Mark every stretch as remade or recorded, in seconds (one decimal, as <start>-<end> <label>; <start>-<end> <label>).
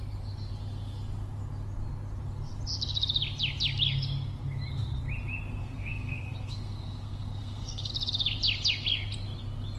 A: 0.0-5.6 recorded; 5.6-7.9 remade; 7.9-9.8 recorded